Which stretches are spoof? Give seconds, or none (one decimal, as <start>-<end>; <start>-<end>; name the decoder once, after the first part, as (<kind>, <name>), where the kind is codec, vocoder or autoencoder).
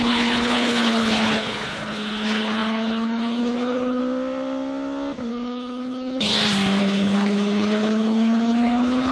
0.0-4.0 (codec, HILCodec); 5.3-6.3; 6.8-9.1